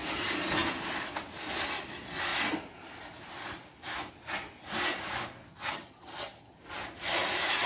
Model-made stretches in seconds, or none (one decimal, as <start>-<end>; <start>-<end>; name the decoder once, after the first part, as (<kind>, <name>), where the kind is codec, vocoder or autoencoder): 5.5-6.6 (vocoder, HiFi-GAN)